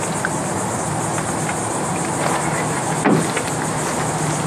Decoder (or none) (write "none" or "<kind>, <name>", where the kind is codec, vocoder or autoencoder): none